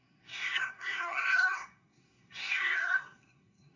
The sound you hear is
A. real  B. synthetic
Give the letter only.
B